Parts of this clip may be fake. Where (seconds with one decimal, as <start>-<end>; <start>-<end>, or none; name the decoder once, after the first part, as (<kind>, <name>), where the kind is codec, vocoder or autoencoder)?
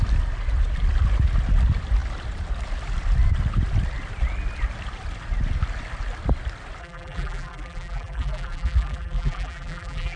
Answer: 6.8-10.2 (vocoder, BigVGAN v2)